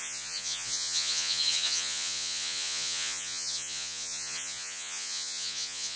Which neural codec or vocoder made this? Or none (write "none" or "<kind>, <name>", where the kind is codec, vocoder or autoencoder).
vocoder, Vocos